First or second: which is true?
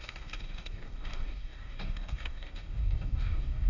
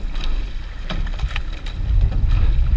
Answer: second